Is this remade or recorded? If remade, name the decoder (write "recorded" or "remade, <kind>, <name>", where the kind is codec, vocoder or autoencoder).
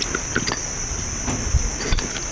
recorded